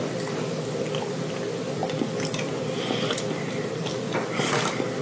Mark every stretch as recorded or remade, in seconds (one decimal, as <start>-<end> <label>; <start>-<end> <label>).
0.0-5.0 recorded